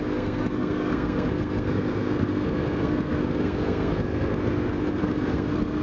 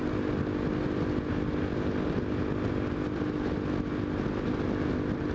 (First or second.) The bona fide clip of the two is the second